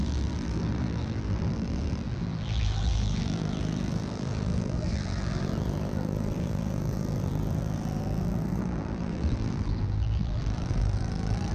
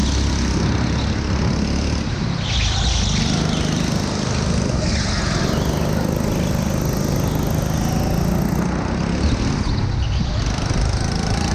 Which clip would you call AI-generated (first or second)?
first